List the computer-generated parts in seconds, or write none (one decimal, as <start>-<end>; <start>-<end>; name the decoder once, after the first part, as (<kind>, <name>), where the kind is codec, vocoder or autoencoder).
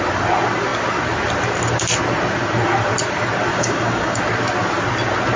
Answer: 3.5-4.2 (codec, DAC)